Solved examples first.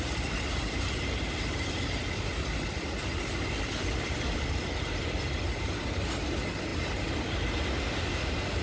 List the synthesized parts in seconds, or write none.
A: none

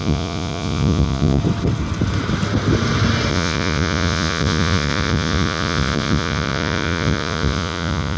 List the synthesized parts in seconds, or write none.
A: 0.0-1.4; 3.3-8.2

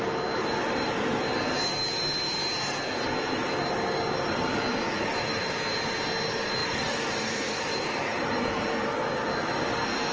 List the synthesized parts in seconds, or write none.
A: 6.6-8.2